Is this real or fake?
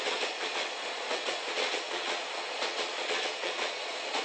fake